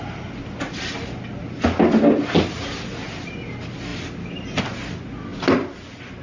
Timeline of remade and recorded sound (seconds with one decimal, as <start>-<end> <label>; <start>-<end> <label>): 0.0-5.3 recorded; 5.3-6.2 remade